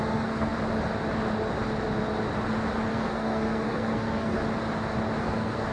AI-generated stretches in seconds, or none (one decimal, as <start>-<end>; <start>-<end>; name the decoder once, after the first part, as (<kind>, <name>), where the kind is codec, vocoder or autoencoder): 0.0-0.5 (codec, SNAC); 2.9-4.4; 5.2-5.7